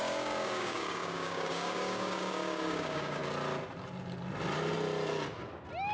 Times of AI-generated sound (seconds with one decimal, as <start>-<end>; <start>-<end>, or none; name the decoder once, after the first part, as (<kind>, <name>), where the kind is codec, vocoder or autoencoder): 0.0-3.2 (codec, DAC)

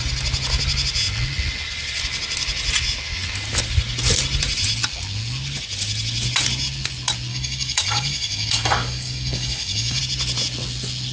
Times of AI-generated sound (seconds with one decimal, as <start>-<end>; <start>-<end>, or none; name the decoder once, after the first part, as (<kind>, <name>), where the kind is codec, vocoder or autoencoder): 7.3-10.0 (codec, DAC)

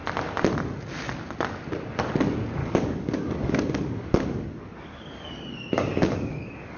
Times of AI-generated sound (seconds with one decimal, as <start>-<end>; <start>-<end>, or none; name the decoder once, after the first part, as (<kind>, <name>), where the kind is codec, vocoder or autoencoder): 2.6-6.8 (codec, DAC)

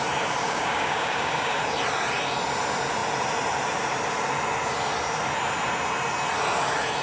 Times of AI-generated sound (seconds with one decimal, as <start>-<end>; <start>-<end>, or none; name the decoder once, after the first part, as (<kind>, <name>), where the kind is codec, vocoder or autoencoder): 0.4-1.6 (codec, DAC)